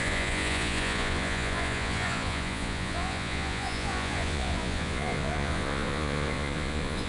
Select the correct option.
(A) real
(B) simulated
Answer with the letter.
B